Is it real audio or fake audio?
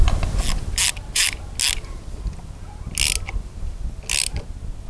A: real